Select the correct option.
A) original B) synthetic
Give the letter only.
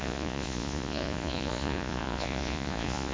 B